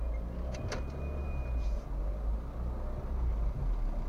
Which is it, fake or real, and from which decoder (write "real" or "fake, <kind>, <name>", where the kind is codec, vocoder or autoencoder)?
real